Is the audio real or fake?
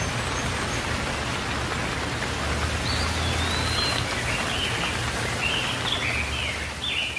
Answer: real